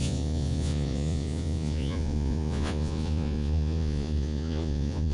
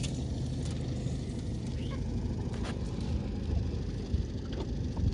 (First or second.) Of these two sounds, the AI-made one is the first